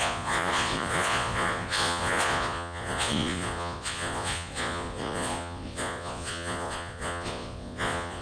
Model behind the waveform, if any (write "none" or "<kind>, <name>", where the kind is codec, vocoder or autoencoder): vocoder, Vocos